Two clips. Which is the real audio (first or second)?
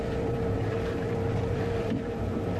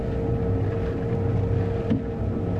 second